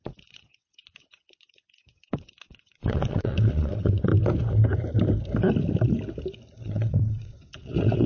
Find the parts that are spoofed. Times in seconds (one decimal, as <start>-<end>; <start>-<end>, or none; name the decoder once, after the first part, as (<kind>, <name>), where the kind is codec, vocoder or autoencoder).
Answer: 0.0-4.1 (vocoder, WaveNeXt); 6.6-8.1